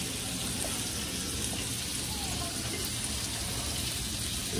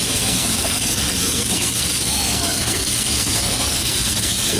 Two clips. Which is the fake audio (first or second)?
second